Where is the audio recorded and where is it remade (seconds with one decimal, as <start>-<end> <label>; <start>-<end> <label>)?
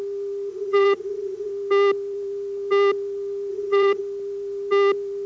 0.0-0.5 recorded; 0.5-1.5 remade; 1.5-3.5 recorded; 3.5-4.0 remade; 4.0-5.3 recorded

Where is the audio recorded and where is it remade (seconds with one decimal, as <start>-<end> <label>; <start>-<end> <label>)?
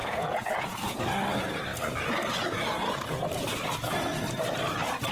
0.0-1.0 remade; 1.0-5.1 recorded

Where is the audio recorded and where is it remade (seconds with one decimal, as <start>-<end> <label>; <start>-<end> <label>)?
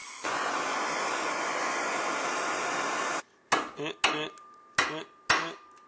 0.0-2.0 remade; 2.0-5.9 recorded